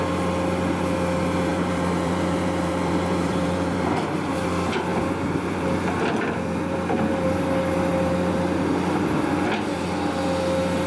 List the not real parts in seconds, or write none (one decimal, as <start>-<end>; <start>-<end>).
1.5-4.3; 4.9-6.1; 7.9-8.6